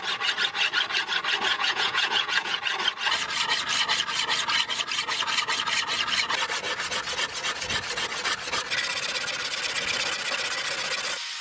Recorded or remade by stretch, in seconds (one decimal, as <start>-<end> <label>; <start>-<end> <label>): 0.0-1.5 recorded; 1.5-2.6 remade; 2.6-11.4 recorded